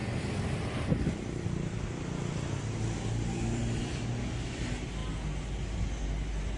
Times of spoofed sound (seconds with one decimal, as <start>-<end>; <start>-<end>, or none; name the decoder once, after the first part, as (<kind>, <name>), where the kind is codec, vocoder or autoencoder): 0.0-4.0 (vocoder, BigVGAN v2)